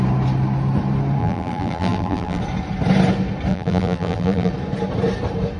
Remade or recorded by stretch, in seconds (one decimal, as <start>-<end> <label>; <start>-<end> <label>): 0.0-1.2 recorded; 1.2-2.4 remade; 2.4-3.5 recorded; 3.5-4.5 remade; 4.5-5.6 recorded